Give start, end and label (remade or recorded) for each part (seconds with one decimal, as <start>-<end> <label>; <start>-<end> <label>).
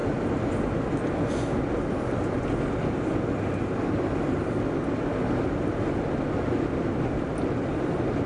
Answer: 0.0-8.3 recorded